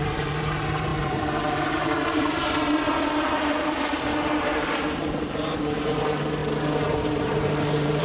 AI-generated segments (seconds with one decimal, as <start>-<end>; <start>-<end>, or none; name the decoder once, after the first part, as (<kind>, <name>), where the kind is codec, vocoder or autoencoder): 0.0-6.4 (vocoder, BigVGAN v2); 7.0-8.0